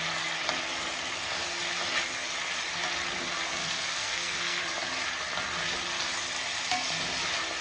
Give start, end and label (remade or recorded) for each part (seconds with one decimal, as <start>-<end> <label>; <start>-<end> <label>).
0.0-3.6 recorded; 3.6-4.6 remade; 4.6-7.6 recorded

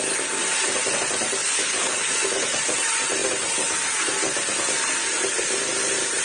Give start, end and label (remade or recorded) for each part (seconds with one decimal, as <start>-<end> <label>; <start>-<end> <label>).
0.0-1.4 recorded; 1.4-2.1 remade; 2.1-6.2 recorded

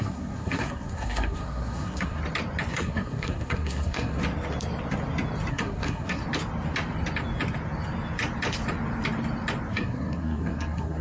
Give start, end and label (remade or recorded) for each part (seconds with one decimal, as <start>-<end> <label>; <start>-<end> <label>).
0.0-2.2 remade; 2.2-2.7 recorded; 2.7-4.2 remade; 4.2-5.5 recorded; 5.5-6.2 remade; 6.2-9.7 recorded; 9.7-11.0 remade

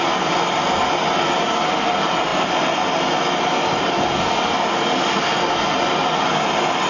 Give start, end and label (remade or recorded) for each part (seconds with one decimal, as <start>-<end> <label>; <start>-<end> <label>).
0.0-6.9 recorded